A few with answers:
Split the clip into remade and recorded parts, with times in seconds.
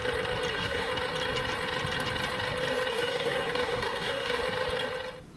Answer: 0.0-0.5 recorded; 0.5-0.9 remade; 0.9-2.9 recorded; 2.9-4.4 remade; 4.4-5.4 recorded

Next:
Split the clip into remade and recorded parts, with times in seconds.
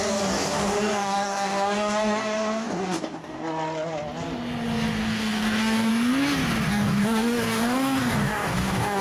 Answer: 0.0-3.4 remade; 3.4-5.0 recorded; 5.0-5.9 remade; 5.9-6.7 recorded; 6.7-9.0 remade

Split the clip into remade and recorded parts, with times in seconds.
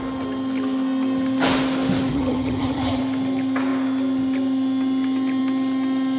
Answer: 0.0-2.1 recorded; 2.1-3.0 remade; 3.0-6.2 recorded